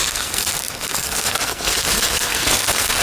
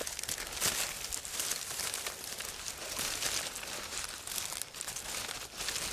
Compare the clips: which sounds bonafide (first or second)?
second